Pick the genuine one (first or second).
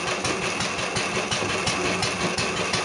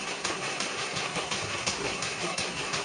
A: first